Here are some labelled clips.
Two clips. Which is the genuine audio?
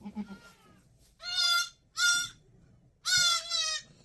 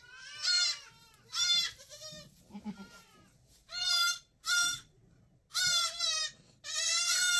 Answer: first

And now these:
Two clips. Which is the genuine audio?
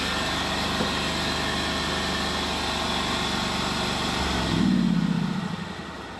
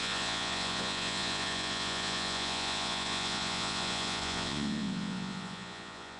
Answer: first